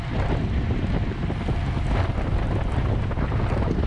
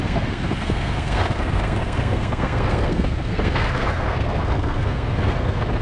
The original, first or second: first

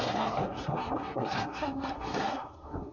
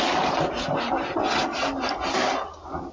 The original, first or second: second